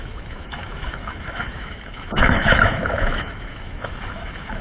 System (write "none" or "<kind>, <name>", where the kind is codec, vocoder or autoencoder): autoencoder, DAC-VAE